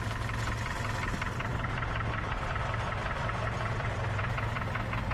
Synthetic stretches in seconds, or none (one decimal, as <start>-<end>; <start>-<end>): 1.5-4.0